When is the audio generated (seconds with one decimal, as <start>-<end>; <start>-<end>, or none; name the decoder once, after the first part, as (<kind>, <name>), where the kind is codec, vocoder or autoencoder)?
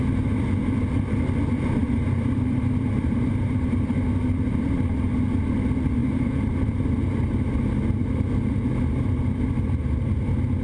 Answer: 1.8-4.2 (vocoder, BigVGAN v2); 6.0-7.6; 8.0-9.4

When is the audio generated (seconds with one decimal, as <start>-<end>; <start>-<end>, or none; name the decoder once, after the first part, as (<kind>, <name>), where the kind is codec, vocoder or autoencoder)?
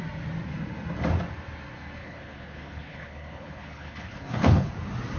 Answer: 2.0-4.7 (codec, HILCodec)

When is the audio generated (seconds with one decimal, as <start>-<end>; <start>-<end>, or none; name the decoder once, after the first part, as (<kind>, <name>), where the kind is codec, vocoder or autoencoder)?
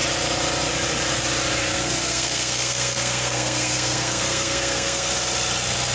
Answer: 1.6-5.1 (codec, SNAC)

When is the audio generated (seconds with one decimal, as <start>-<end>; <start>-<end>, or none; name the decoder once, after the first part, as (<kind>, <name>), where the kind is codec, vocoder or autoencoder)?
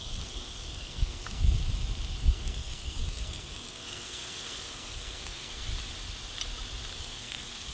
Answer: 0.0-1.6 (codec, SNAC); 2.2-5.7; 7.0-7.7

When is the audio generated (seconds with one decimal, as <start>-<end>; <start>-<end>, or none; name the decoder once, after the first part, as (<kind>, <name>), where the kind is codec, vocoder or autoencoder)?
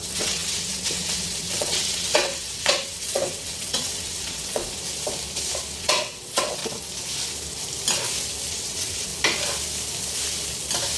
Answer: 0.0-4.6 (vocoder, WaveNeXt); 5.8-6.6; 8.5-9.1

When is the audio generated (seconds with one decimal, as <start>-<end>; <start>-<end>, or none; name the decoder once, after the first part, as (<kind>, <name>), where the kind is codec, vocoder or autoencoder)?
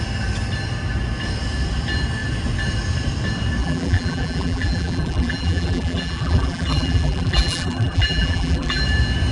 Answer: 3.6-8.8 (vocoder, BigVGAN v2)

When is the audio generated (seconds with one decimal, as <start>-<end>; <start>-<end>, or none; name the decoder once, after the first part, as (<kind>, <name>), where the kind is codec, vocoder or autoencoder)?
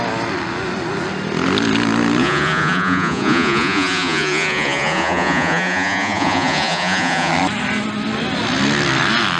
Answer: 2.2-7.3 (vocoder, Vocos)